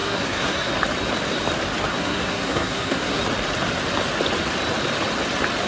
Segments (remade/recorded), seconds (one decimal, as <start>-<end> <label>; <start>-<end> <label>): 0.0-0.7 remade; 0.7-1.9 recorded; 1.9-3.2 remade; 3.2-5.7 recorded

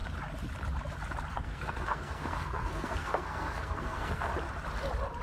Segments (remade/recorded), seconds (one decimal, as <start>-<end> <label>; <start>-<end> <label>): 0.0-1.3 recorded; 1.3-4.3 remade; 4.3-5.2 recorded

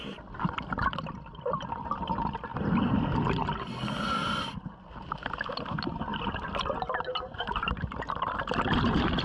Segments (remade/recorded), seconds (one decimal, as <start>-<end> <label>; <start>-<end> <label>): 0.0-9.2 recorded

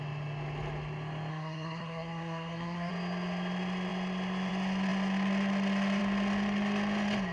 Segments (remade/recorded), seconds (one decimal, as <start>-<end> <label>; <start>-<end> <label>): 0.0-1.3 recorded; 1.3-2.9 remade; 2.9-7.3 recorded

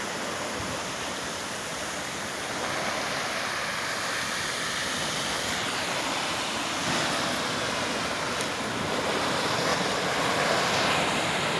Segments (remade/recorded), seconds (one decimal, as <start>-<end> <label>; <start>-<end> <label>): 0.0-11.6 recorded

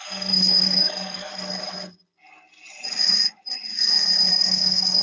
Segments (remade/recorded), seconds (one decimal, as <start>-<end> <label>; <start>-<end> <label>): 0.0-1.3 remade; 1.3-4.3 recorded; 4.3-5.0 remade